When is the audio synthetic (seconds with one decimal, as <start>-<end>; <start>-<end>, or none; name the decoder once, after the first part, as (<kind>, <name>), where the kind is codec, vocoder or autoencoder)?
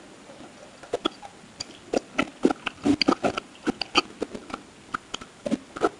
none